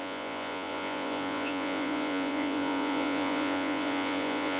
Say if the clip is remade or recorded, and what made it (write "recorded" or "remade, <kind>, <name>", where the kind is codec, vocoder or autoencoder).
remade, vocoder, Vocos